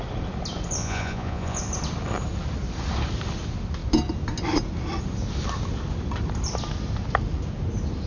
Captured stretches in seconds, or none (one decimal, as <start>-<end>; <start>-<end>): 0.0-0.8; 1.6-8.1